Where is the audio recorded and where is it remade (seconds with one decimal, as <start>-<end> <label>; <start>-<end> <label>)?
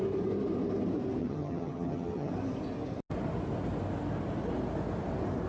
0.0-1.2 recorded; 1.2-2.3 remade; 2.3-5.5 recorded